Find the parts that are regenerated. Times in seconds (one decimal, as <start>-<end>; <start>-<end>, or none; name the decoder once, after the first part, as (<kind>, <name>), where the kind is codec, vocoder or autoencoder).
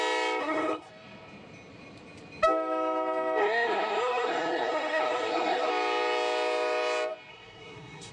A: 0.4-0.9 (codec, SNAC); 3.4-5.7; 7.3-8.1